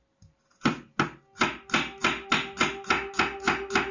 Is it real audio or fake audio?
real